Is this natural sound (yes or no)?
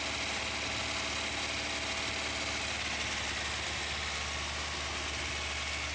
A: yes